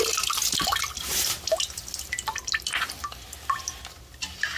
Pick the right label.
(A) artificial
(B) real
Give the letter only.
B